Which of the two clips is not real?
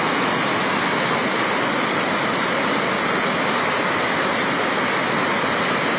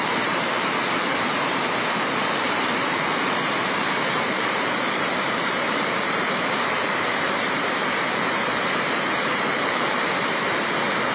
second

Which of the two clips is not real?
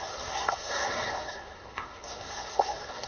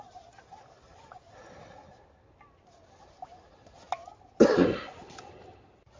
first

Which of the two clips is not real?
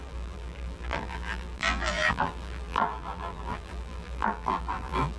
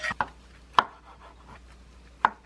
first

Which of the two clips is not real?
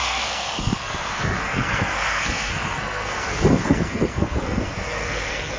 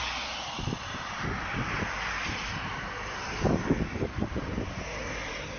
first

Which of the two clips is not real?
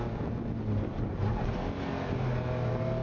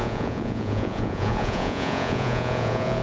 second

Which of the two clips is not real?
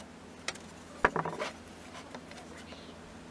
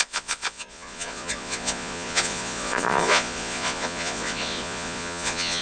second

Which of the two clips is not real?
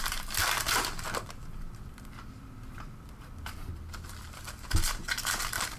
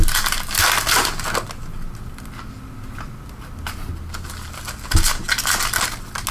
first